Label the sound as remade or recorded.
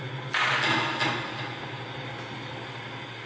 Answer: recorded